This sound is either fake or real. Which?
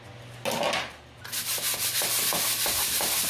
real